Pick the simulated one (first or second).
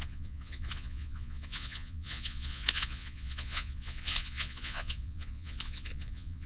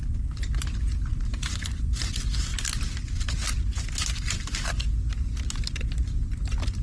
first